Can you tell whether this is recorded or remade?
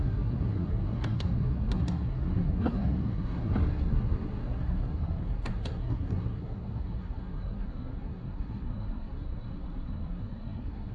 remade